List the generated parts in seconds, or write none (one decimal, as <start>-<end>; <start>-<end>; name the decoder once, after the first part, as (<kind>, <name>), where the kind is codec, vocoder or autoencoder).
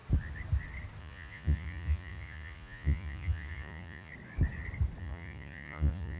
1.0-4.1 (vocoder, Vocos); 5.0-6.2